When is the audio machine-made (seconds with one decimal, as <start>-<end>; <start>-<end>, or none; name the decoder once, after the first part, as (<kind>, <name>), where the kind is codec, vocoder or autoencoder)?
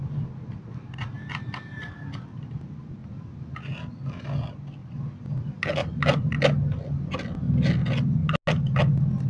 none